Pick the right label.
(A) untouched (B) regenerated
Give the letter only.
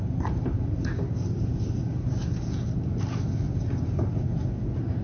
A